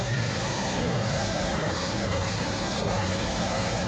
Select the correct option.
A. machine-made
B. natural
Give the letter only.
A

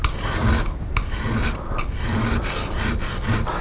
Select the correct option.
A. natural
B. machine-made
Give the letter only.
A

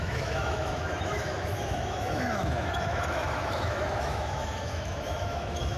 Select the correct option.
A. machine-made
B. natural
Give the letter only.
A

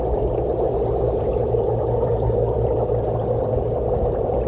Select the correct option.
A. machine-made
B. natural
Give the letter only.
A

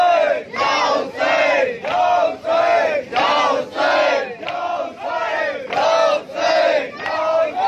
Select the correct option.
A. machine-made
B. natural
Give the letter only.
B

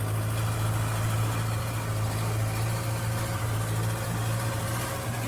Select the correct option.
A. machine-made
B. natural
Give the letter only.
B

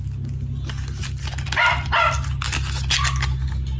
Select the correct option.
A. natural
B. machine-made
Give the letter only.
A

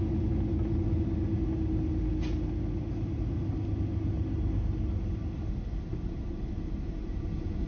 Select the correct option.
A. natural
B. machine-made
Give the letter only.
A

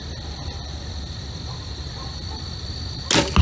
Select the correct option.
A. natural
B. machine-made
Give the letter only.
A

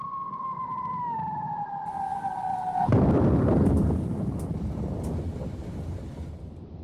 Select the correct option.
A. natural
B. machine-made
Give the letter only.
A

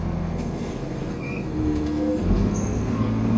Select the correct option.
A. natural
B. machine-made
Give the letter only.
B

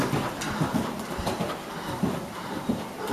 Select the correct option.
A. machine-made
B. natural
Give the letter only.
B